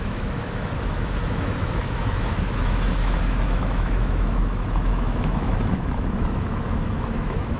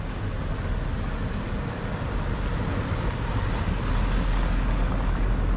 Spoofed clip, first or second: first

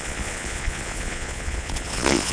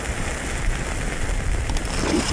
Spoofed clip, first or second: first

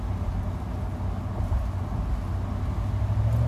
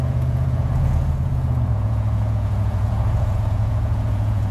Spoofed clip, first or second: second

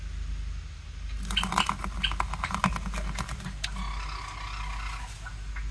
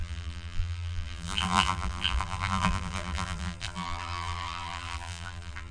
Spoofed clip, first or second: second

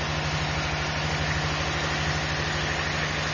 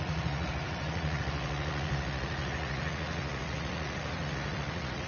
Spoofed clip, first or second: second